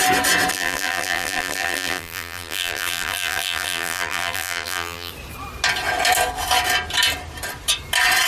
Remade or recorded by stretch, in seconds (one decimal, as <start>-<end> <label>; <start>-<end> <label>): 0.0-0.5 recorded; 0.5-5.1 remade; 5.1-8.3 recorded